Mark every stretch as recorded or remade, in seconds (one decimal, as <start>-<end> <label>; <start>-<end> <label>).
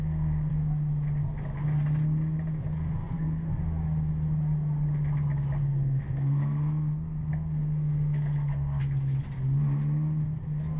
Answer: 0.0-0.5 remade; 0.5-3.0 recorded; 3.0-3.6 remade; 3.6-5.6 recorded; 5.6-8.8 remade; 8.8-10.8 recorded